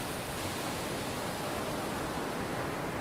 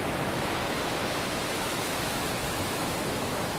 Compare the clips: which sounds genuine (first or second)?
first